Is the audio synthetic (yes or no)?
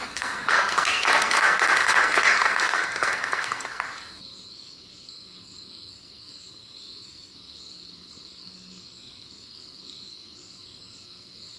yes